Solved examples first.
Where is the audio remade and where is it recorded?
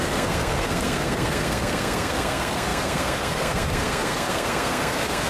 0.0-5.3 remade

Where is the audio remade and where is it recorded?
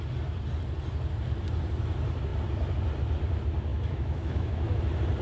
0.0-3.7 recorded; 3.7-4.8 remade; 4.8-5.2 recorded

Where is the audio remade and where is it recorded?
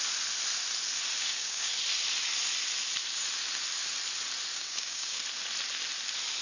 0.0-1.2 recorded; 1.2-1.7 remade; 1.7-4.5 recorded; 4.5-5.2 remade; 5.2-6.4 recorded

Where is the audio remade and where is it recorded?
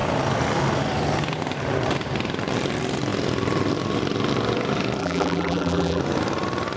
0.0-5.0 recorded; 5.0-6.0 remade; 6.0-6.8 recorded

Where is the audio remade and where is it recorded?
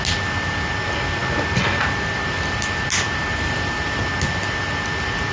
0.0-5.3 recorded